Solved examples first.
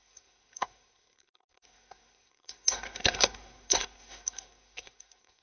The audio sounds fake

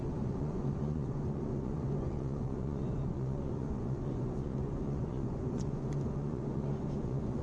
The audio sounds fake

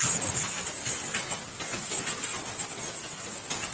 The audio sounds real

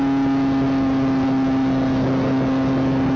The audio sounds real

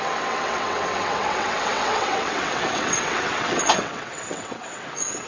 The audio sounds fake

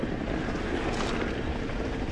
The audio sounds real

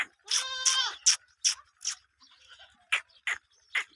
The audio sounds real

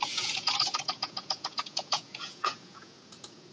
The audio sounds fake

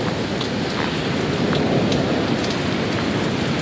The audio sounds real